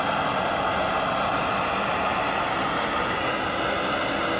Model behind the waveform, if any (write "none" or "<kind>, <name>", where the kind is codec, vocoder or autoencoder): none